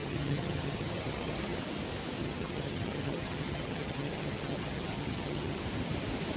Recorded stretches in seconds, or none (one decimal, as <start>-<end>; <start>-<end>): 1.6-2.2; 5.6-6.4